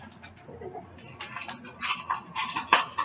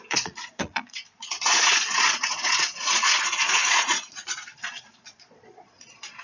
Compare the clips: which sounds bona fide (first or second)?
first